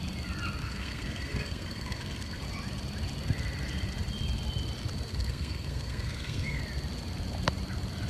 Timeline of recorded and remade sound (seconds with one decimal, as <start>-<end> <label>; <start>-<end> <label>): 0.0-0.6 recorded; 0.6-2.4 remade; 2.4-5.1 recorded; 5.1-6.6 remade; 6.6-8.1 recorded